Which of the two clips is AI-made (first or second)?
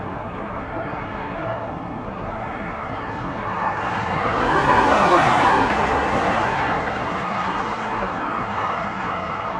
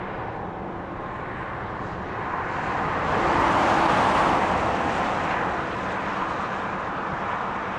first